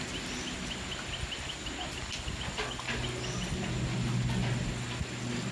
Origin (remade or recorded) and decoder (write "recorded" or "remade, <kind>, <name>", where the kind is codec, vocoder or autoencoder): recorded